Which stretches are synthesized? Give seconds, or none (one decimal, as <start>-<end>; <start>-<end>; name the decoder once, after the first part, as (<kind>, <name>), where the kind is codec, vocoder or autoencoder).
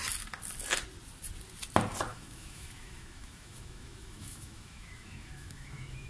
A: 2.1-6.1 (autoencoder, DAC-VAE)